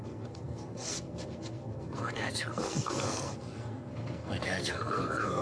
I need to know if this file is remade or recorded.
remade